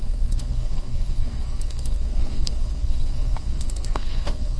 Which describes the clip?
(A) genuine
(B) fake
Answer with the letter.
B